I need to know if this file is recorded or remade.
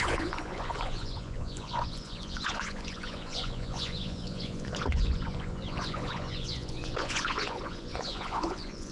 remade